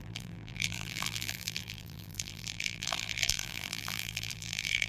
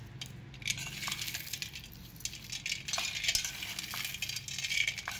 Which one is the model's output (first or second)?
first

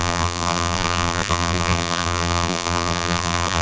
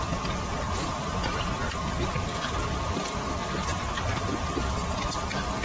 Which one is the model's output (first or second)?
first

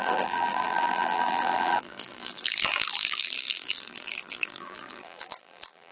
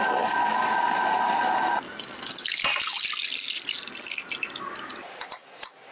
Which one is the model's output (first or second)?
first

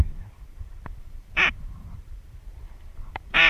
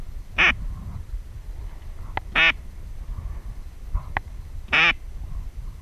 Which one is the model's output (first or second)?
first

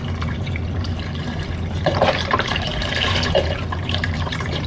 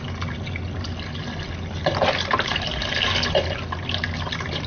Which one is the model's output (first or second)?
first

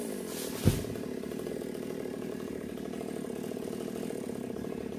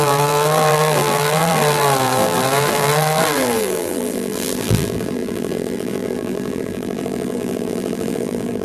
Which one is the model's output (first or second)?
second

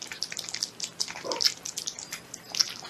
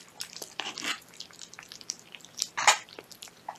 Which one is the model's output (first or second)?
second